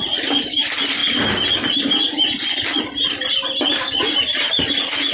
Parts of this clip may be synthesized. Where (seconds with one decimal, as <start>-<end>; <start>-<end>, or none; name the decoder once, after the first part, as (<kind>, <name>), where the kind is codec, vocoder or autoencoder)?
none